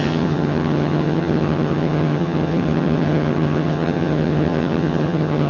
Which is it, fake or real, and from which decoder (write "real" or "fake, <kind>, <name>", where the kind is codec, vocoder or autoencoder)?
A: fake, vocoder, HiFi-GAN